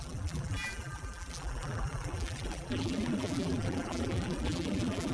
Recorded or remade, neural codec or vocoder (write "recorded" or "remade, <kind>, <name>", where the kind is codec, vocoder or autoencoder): remade, vocoder, BigVGAN v2